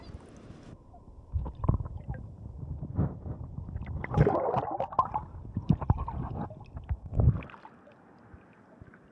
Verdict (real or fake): real